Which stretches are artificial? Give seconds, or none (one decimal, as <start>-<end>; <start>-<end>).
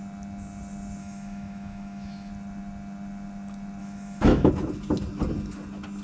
1.0-2.3; 3.8-4.5